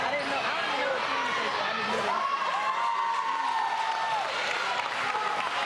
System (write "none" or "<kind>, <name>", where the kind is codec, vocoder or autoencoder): none